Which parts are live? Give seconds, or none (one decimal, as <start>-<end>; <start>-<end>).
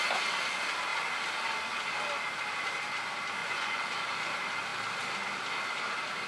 0.0-3.4; 4.3-6.3